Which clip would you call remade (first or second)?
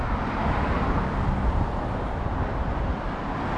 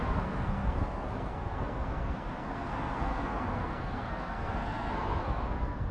second